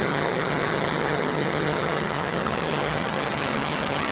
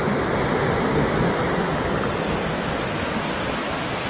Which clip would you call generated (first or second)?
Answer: first